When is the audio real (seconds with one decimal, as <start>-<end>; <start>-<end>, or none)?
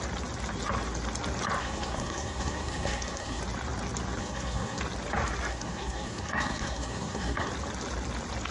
0.0-1.6; 3.4-4.2; 4.8-5.5; 7.5-8.5